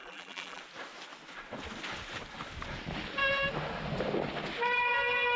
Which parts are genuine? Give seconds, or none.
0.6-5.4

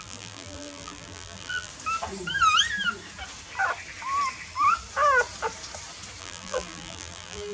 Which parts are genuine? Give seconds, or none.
1.7-6.2

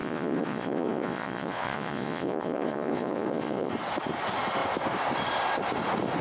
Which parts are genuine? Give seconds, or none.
3.7-6.2